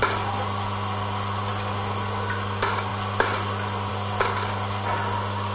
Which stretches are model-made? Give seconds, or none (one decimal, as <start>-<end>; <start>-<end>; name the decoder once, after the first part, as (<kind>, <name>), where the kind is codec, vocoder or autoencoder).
none